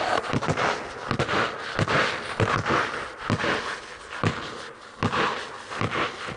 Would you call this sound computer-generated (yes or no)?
no